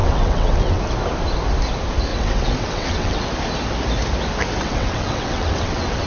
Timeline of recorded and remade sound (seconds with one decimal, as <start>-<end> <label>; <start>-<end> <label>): 0.0-0.8 remade; 0.8-2.1 recorded; 2.1-3.3 remade; 3.3-4.6 recorded; 4.6-6.1 remade